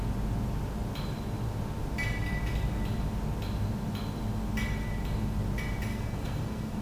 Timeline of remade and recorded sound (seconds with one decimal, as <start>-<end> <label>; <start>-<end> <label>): 0.0-5.9 recorded; 5.9-6.8 remade